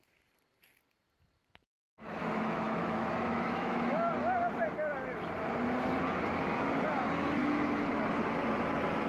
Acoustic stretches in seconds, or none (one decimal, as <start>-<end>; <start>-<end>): 0.0-2.2; 4.1-7.4; 7.9-9.1